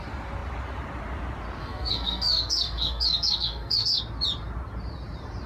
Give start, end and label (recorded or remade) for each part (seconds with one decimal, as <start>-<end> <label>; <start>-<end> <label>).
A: 0.0-1.6 recorded; 1.6-4.0 remade; 4.0-5.5 recorded